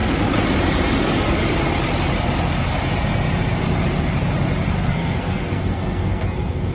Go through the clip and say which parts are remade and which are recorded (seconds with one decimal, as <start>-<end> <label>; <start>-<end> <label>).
0.0-4.8 recorded; 4.8-6.7 remade